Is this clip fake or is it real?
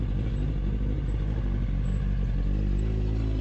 real